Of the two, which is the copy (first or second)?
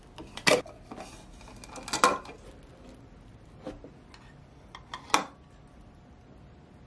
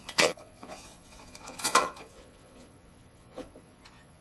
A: second